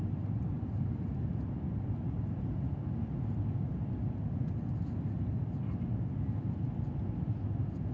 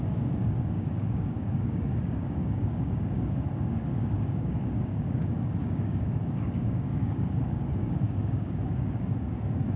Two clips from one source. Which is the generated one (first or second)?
second